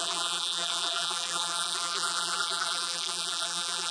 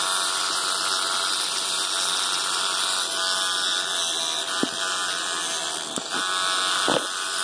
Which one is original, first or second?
second